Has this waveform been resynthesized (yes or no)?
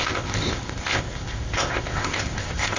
yes